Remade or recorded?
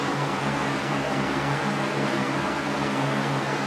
remade